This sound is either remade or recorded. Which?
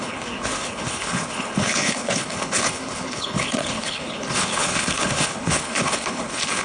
remade